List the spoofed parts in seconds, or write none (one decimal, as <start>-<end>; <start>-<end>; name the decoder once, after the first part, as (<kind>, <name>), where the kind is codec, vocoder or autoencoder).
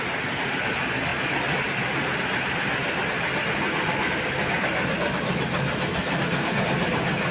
5.9-6.6 (codec, SNAC)